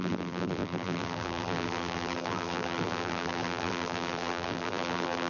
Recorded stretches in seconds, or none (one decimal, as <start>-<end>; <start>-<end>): none

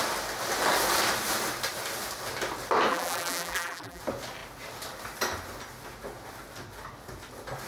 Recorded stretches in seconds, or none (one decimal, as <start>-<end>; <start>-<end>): 0.0-2.9; 4.0-7.7

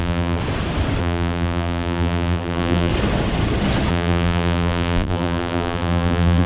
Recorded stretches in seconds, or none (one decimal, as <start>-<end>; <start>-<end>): 0.4-1.0; 2.9-3.9

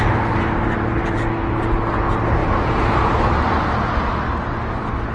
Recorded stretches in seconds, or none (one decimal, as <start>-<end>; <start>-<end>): 0.0-2.4; 3.0-5.1

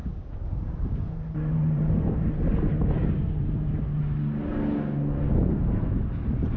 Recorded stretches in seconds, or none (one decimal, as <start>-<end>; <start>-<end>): 4.0-6.6

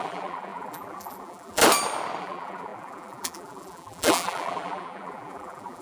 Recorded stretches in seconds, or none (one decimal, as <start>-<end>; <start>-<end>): 1.6-2.2